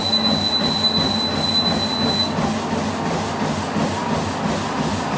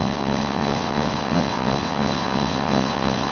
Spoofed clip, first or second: second